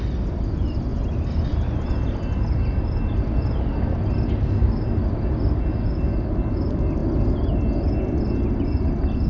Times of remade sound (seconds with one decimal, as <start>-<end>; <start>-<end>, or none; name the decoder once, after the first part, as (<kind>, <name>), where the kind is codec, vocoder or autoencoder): none